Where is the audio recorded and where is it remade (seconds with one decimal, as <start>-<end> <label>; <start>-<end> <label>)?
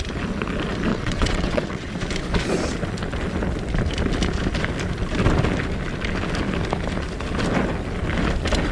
0.0-0.9 recorded; 0.9-1.9 remade; 1.9-8.7 recorded